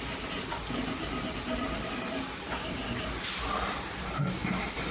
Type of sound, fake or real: real